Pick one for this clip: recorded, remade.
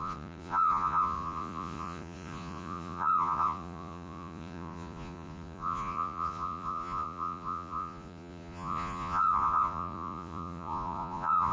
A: remade